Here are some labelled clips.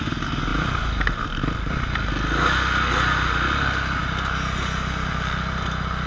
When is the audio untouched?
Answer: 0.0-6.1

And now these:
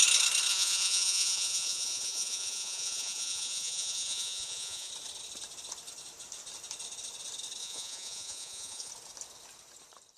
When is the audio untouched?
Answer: 0.0-0.5; 4.9-7.6; 8.9-10.2

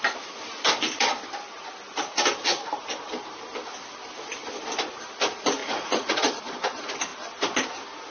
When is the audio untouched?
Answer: 0.0-5.6; 6.4-8.1

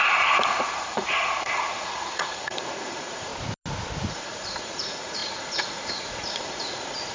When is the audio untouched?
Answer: 3.3-4.1

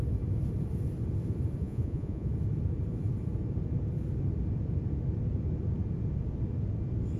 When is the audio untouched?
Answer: 0.0-1.6; 2.3-7.2

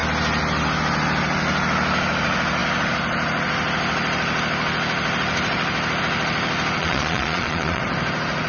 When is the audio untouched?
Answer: 0.0-6.8; 7.8-8.5

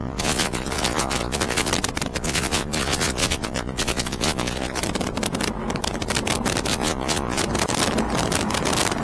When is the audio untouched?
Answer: 1.7-2.1; 4.8-6.7; 7.4-9.0

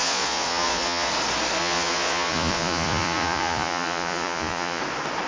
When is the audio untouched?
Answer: 1.1-1.6; 4.8-5.3